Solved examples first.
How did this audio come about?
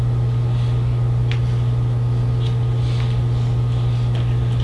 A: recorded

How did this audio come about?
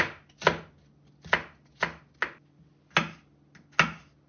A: recorded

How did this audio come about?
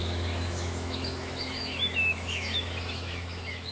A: remade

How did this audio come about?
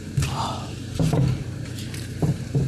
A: remade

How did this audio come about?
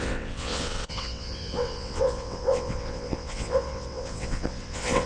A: remade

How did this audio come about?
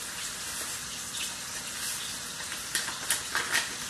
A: recorded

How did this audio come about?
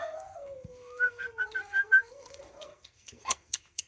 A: remade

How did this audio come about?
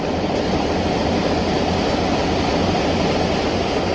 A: recorded